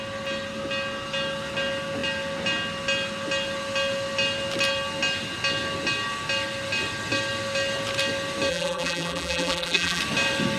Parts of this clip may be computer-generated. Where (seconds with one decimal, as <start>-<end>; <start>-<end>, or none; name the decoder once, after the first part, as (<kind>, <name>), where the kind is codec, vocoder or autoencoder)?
8.5-10.0 (vocoder, BigVGAN v2)